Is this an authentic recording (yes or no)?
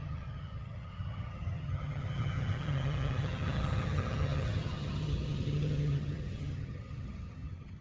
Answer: no